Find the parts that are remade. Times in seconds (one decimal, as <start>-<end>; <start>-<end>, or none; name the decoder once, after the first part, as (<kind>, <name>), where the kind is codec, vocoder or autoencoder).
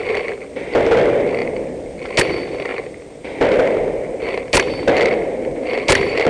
none